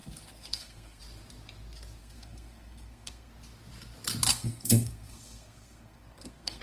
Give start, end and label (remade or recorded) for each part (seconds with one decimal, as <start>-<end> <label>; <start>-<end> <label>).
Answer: 0.0-1.0 remade; 1.0-2.0 recorded; 2.0-3.3 remade; 3.3-4.3 recorded; 4.3-6.6 remade